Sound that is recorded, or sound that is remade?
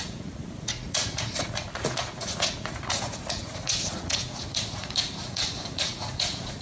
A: remade